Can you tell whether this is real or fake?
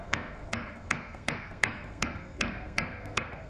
fake